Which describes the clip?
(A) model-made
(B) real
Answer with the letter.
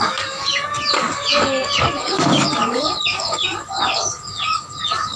A